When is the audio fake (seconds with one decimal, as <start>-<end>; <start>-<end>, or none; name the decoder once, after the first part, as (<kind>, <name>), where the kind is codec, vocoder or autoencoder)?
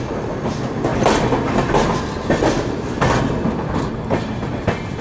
none